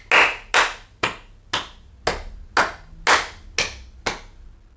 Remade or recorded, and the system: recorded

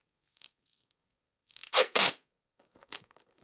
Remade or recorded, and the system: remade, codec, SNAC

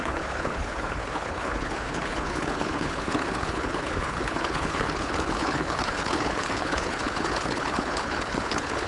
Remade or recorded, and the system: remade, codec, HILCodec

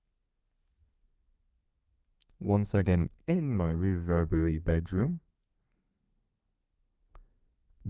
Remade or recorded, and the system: remade, codec, SNAC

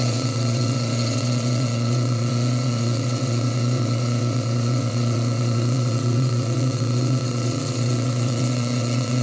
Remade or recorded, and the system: remade, vocoder, WaveNeXt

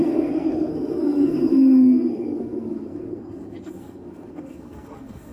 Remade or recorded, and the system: remade, codec, SNAC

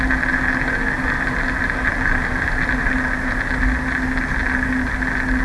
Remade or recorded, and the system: recorded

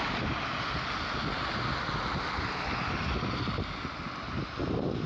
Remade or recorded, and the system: recorded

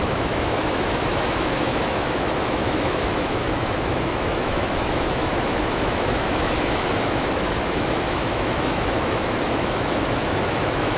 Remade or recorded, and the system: remade, autoencoder, DAC-VAE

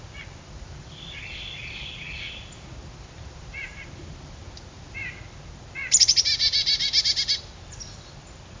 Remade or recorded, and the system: recorded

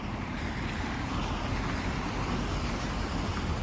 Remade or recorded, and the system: recorded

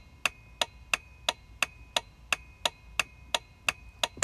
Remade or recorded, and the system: recorded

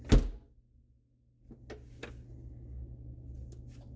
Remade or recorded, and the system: recorded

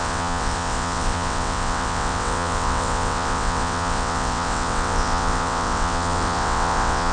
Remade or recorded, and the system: remade, vocoder, WaveNeXt